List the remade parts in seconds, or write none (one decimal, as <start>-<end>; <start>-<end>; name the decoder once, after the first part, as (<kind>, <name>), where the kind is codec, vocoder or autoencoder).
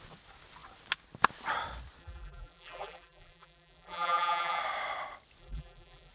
2.0-4.6 (vocoder, BigVGAN v2); 5.4-6.1